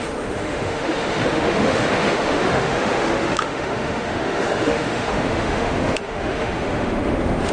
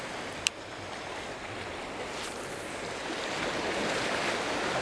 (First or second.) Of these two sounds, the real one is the second